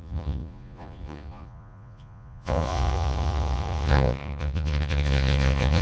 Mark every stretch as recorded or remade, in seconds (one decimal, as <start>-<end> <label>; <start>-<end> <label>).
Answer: 0.0-5.8 remade